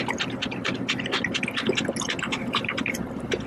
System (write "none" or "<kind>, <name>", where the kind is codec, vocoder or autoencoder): none